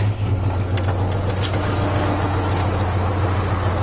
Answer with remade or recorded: recorded